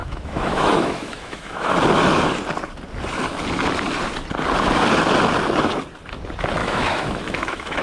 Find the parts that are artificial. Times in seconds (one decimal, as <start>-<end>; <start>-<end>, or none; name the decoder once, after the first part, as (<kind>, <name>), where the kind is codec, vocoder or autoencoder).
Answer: 0.0-1.7 (autoencoder, DAC-VAE); 6.6-7.8